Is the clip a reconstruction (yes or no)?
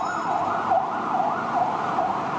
no